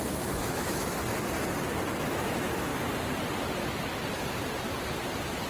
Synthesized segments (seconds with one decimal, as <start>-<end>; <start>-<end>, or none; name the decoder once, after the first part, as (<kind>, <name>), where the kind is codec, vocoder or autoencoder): 0.0-1.0 (autoencoder, DAC-VAE); 1.9-2.7